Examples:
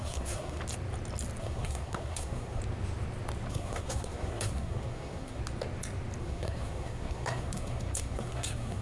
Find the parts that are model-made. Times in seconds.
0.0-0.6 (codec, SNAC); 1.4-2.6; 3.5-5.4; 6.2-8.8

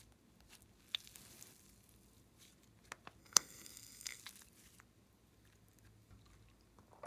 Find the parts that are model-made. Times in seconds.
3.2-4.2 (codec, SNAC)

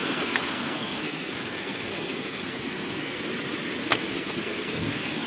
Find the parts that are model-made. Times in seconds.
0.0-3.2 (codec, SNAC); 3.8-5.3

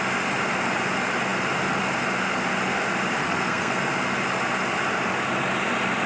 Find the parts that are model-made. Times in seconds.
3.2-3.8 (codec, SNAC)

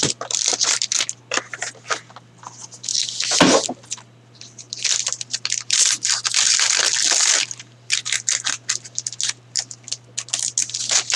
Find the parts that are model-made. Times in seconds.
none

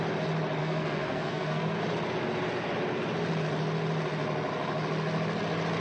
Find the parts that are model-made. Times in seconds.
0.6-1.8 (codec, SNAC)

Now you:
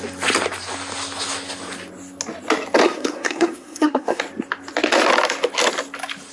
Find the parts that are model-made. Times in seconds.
2.8-4.2 (codec, SNAC)

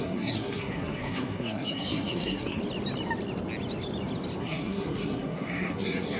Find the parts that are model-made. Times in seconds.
0.0-2.6 (codec, SNAC); 4.4-6.2